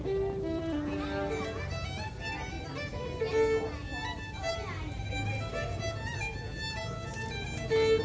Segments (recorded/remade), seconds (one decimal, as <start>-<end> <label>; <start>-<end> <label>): 0.0-8.0 recorded